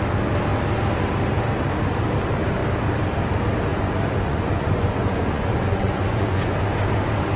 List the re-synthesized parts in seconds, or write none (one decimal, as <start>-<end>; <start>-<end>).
3.7-6.5